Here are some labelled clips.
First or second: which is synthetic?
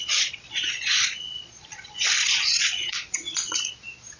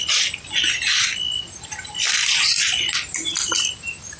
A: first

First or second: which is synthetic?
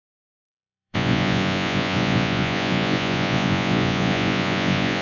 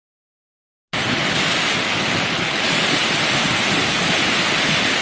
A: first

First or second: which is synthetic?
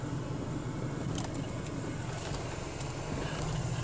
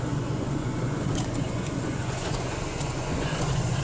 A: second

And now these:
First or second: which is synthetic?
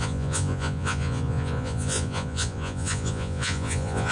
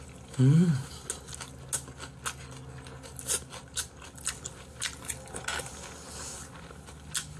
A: first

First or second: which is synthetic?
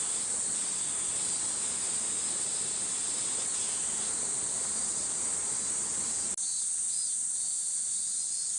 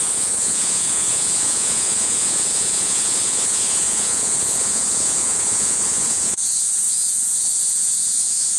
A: second